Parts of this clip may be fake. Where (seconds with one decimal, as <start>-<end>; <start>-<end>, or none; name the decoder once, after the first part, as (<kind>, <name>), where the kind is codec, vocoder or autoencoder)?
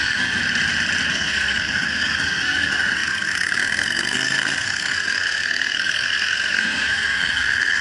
0.0-0.4 (codec, SNAC); 1.1-7.8